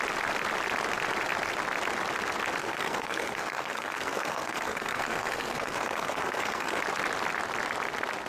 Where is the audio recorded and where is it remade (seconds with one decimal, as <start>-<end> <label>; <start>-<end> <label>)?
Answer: 0.0-2.6 recorded; 2.6-6.8 remade; 6.8-8.3 recorded